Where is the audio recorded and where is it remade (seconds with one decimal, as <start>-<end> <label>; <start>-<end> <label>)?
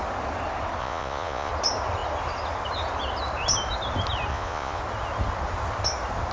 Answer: 0.0-0.8 recorded; 0.8-1.5 remade; 1.5-4.3 recorded; 4.3-4.8 remade; 4.8-6.3 recorded